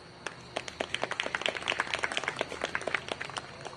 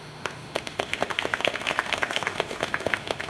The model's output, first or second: second